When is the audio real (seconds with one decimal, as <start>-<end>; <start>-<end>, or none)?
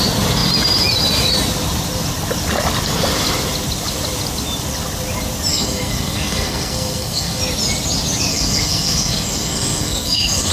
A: 0.0-5.5; 7.4-8.3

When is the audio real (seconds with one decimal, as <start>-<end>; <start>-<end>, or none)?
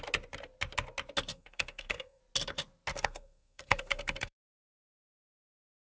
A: 0.0-1.3; 2.2-2.9; 5.3-5.8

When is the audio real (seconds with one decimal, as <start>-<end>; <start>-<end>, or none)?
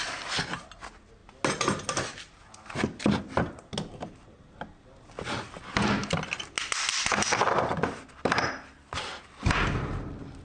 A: 0.0-10.4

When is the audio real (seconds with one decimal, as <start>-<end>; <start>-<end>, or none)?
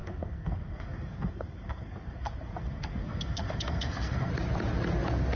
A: 4.3-5.4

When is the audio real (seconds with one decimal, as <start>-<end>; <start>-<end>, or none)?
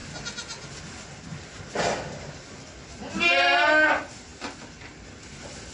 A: 0.0-5.7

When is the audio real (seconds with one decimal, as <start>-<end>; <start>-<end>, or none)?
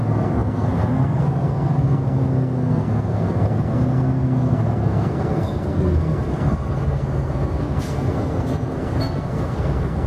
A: none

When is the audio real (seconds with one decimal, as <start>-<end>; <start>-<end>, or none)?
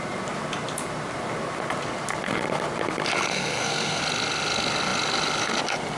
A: 0.0-3.3; 4.0-6.0